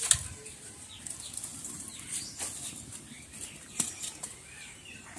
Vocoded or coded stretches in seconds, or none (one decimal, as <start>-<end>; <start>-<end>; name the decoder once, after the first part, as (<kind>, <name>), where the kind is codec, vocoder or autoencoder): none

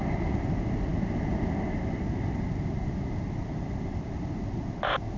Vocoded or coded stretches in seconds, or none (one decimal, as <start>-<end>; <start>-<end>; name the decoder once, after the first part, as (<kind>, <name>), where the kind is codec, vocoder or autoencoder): none

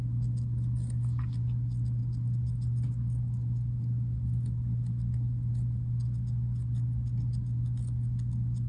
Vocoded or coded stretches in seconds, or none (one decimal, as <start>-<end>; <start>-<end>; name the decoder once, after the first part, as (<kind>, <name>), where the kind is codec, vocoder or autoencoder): none

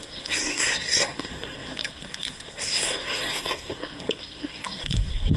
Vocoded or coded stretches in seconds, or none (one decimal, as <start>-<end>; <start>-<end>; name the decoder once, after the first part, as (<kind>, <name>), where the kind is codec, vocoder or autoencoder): 0.0-5.4 (codec, SNAC)